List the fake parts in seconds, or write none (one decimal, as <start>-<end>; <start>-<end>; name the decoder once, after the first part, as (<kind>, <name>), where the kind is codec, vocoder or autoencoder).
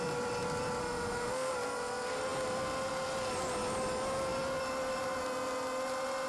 0.8-1.5 (autoencoder, DAC-VAE)